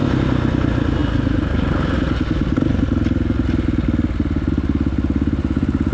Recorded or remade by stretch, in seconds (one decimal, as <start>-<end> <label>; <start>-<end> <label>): 0.0-5.9 recorded